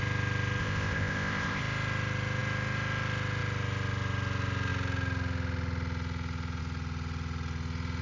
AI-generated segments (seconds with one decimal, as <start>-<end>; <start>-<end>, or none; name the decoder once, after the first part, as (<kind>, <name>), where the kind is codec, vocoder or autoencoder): 0.6-1.6 (codec, ZipCodec)

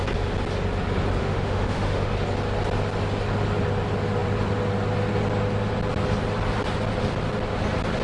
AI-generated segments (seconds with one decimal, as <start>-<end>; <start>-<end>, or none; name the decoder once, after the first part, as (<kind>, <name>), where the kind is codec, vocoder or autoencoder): 1.2-2.1 (autoencoder, DAC-VAE)

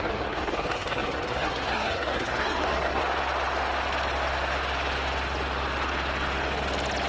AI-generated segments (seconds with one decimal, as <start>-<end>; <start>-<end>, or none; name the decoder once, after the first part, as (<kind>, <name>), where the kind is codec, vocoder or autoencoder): 0.0-3.0 (codec, SNAC)

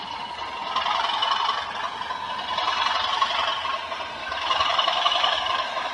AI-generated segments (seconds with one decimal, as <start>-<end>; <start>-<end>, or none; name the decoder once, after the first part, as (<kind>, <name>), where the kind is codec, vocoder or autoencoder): 4.2-5.9 (autoencoder, DAC-VAE)